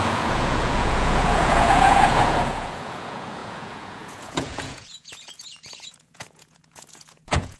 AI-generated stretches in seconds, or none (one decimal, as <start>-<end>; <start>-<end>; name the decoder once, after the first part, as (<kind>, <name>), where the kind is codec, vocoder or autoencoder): 0.0-7.6 (vocoder, Vocos)